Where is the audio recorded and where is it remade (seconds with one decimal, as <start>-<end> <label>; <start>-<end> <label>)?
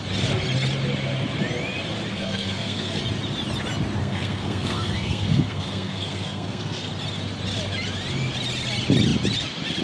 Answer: 0.0-2.1 recorded; 2.1-3.0 remade; 3.0-4.0 recorded; 4.0-6.9 remade; 6.9-9.8 recorded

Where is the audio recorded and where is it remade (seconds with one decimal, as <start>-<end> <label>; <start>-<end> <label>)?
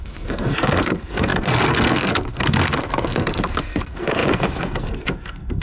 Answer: 0.0-5.6 remade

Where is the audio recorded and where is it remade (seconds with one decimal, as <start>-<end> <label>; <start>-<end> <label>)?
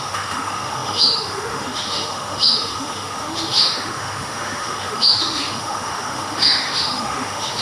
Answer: 0.0-7.6 remade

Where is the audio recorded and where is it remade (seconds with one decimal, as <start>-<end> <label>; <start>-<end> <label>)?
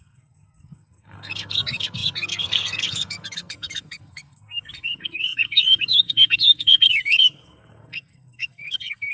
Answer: 0.0-9.1 remade